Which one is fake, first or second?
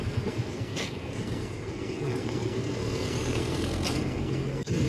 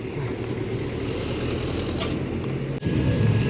first